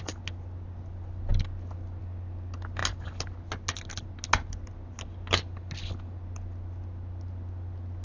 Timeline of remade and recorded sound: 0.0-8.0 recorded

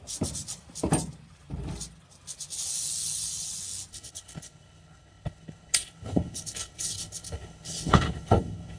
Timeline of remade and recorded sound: 0.0-3.9 recorded; 3.9-8.8 remade

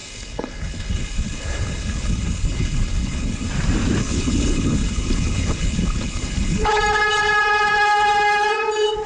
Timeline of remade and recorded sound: 0.0-3.5 remade; 3.5-4.0 recorded; 4.0-6.8 remade; 6.8-9.1 recorded

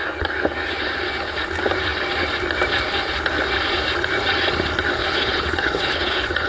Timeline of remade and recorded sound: 0.0-5.0 recorded; 5.0-6.5 remade

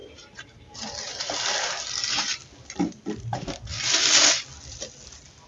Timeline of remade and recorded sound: 0.0-5.5 recorded

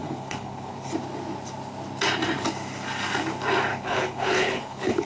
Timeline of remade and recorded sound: 0.0-0.9 remade; 0.9-3.7 recorded; 3.7-5.1 remade

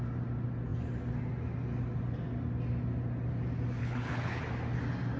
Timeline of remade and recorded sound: 0.0-3.8 recorded; 3.8-4.4 remade; 4.4-5.2 recorded

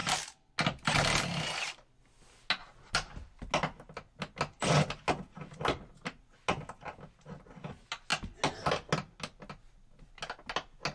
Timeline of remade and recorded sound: 0.0-10.9 recorded